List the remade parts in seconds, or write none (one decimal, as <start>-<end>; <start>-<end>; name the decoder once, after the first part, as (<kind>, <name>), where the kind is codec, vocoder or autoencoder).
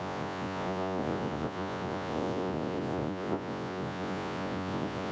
0.0-5.1 (vocoder, Vocos)